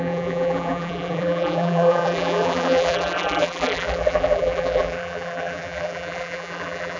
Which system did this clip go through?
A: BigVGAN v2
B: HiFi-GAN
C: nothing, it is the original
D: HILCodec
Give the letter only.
A